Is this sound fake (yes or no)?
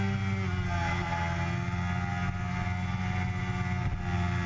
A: no